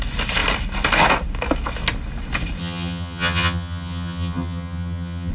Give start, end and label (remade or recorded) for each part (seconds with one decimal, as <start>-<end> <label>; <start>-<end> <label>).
0.0-2.6 recorded; 2.6-5.3 remade